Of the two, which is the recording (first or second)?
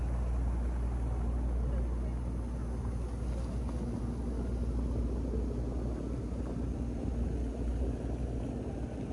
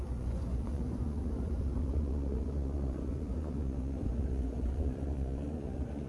first